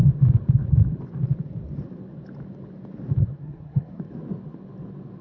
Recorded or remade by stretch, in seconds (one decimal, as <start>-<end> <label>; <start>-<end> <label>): 0.0-3.2 recorded; 3.2-4.0 remade; 4.0-5.2 recorded